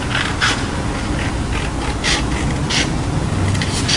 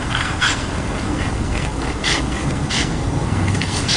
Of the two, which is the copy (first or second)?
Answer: second